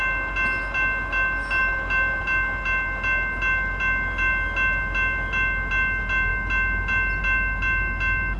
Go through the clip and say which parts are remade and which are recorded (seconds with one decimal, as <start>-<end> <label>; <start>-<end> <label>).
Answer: 0.0-8.4 recorded